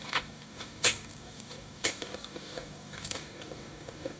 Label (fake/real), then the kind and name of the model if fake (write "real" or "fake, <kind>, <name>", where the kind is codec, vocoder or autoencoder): fake, codec, DAC